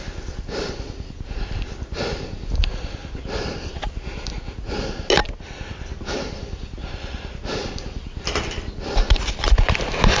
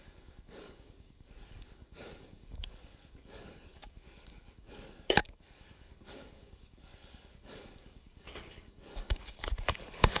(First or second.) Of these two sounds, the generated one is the second